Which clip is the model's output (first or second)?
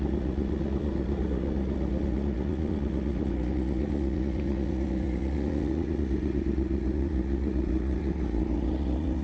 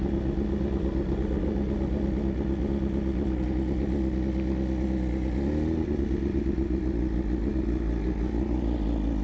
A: first